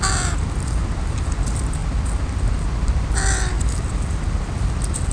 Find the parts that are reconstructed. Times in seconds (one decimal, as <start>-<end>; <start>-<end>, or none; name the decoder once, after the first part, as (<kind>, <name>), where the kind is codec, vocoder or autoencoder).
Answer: none